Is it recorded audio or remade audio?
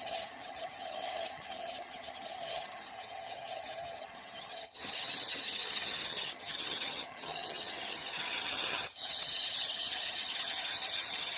remade